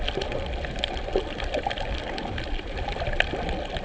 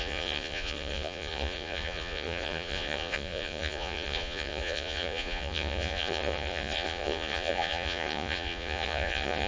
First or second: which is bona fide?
first